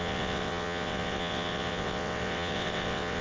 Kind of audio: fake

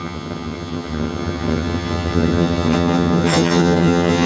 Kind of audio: fake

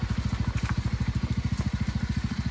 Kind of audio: real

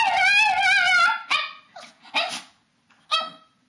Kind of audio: real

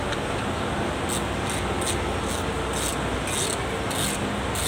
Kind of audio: real